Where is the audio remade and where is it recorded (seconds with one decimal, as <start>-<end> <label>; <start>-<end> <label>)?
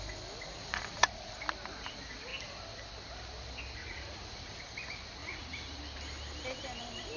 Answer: 0.0-0.6 recorded; 0.6-1.3 remade; 1.3-3.8 recorded; 3.8-4.6 remade; 4.6-5.2 recorded; 5.2-5.8 remade; 5.8-7.2 recorded